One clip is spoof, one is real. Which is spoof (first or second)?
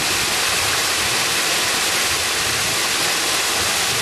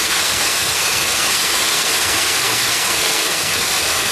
second